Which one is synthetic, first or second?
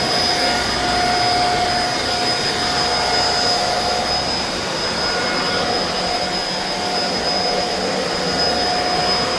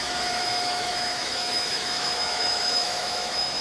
second